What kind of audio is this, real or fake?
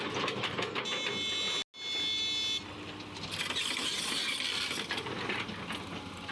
real